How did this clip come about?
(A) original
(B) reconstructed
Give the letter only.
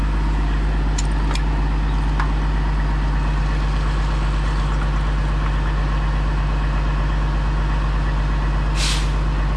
A